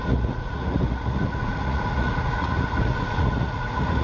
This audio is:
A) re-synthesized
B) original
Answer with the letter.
A